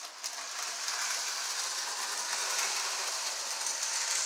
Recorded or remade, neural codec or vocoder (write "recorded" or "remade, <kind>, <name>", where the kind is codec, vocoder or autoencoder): recorded